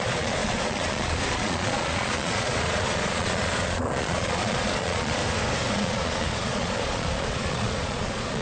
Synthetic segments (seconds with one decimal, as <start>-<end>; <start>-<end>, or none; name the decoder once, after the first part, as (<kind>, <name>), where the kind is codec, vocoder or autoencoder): 0.0-5.2 (vocoder, Vocos); 5.7-8.4